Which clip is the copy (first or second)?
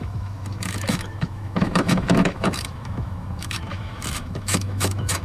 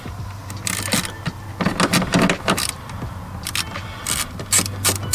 first